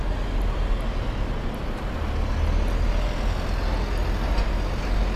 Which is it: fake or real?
real